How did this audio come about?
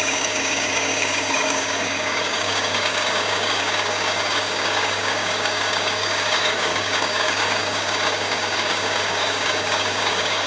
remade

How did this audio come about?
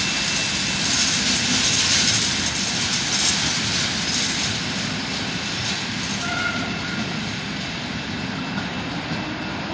recorded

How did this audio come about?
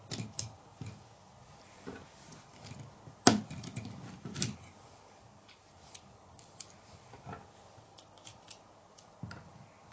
recorded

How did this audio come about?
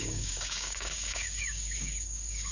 remade